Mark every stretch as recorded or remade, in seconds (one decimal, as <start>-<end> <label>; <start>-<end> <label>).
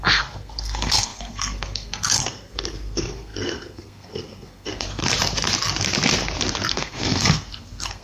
0.0-5.0 remade; 5.0-6.7 recorded; 6.7-8.0 remade